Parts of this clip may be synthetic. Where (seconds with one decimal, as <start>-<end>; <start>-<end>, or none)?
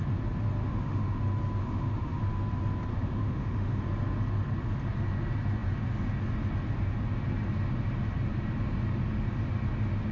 0.6-1.2; 1.6-2.2; 2.9-3.8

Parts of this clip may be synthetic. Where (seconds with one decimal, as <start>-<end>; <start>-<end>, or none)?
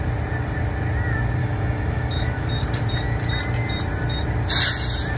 1.4-2.5